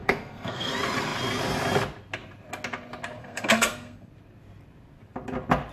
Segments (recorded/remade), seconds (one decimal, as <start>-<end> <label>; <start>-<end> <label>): 0.0-0.7 remade; 0.7-3.2 recorded; 3.2-4.1 remade; 4.1-5.7 recorded

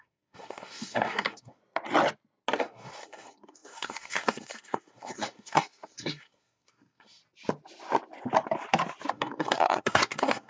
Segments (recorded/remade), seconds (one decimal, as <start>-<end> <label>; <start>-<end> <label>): 0.0-1.6 remade; 1.6-2.6 recorded; 2.6-7.2 remade; 7.2-9.1 recorded; 9.1-10.5 remade

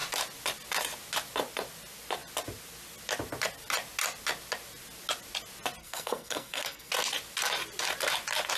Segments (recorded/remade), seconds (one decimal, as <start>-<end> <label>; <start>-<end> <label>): 0.0-5.8 recorded; 5.8-6.9 remade; 6.9-8.6 recorded

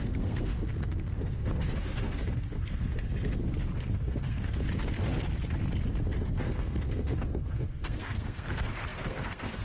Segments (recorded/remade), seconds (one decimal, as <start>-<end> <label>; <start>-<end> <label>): 0.0-3.4 remade; 3.4-3.9 recorded; 3.9-4.6 remade; 4.6-6.1 recorded; 6.1-9.6 remade

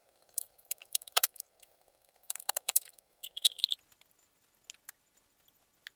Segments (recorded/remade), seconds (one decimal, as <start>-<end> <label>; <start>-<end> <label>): 0.0-3.6 remade; 3.6-6.0 recorded

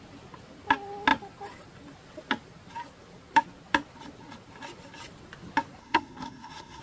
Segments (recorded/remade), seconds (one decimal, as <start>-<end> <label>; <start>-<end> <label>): 0.0-5.8 recorded; 5.8-6.8 remade